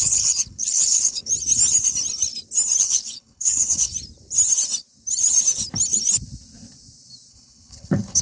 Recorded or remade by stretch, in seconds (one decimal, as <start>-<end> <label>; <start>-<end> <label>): 0.0-1.3 remade; 1.3-2.8 recorded; 2.8-3.9 remade; 3.9-7.3 recorded; 7.3-8.2 remade